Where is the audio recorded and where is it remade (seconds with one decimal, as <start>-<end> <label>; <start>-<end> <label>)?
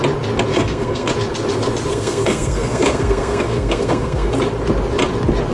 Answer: 0.0-0.5 recorded; 0.5-1.1 remade; 1.1-1.9 recorded; 1.9-4.3 remade; 4.3-5.5 recorded